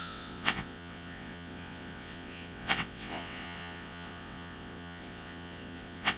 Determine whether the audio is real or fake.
fake